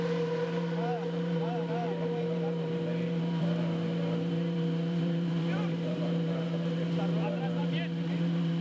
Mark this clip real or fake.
fake